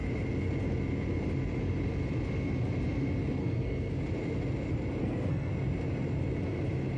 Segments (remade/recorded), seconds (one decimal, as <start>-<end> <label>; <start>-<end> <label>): 0.0-3.4 recorded; 3.4-3.9 remade; 3.9-5.0 recorded; 5.0-5.5 remade; 5.5-7.0 recorded